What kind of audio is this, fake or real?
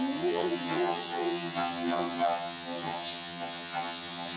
fake